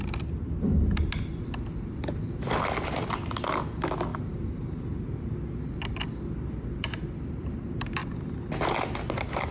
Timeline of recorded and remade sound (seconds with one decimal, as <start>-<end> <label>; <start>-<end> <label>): 0.0-0.7 remade; 0.7-2.3 recorded; 2.3-4.1 remade; 4.1-6.7 recorded; 6.7-8.0 remade; 8.0-8.6 recorded; 8.6-9.5 remade